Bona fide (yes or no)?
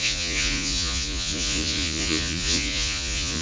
no